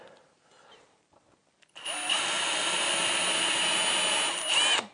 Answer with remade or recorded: recorded